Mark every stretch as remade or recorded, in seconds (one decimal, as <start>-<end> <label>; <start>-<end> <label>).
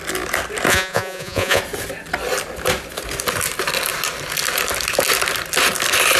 0.0-0.7 recorded; 0.7-1.6 remade; 1.6-6.2 recorded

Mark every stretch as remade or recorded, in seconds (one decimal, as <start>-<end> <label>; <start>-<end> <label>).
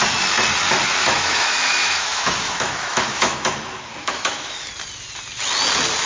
0.0-1.0 recorded; 1.0-4.7 remade; 4.7-6.1 recorded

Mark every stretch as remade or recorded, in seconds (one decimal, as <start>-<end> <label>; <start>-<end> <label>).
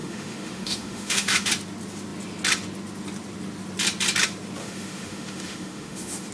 0.0-1.5 remade; 1.5-4.6 recorded; 4.6-6.3 remade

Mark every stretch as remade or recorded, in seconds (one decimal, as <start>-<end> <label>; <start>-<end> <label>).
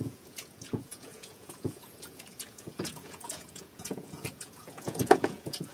0.0-5.7 remade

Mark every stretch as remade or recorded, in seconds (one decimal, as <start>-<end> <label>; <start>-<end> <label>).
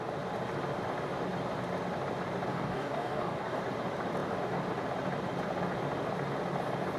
0.0-2.5 recorded; 2.5-3.6 remade; 3.6-7.0 recorded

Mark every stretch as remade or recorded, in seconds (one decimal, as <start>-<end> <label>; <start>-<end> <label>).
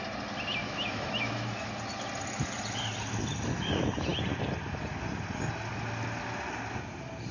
0.0-0.6 recorded; 0.6-1.7 remade; 1.7-7.3 recorded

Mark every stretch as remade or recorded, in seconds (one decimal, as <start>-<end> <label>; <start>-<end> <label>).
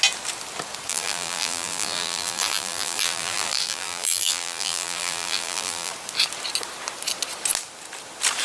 0.0-0.9 recorded; 0.9-5.9 remade; 5.9-8.4 recorded